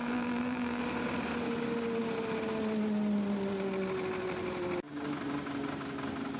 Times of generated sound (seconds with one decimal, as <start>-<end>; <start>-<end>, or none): 0.0-0.8